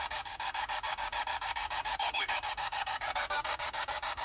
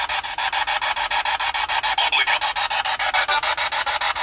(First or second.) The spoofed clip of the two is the first